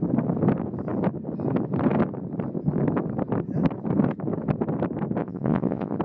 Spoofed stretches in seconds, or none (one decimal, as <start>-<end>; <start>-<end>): 5.2-6.0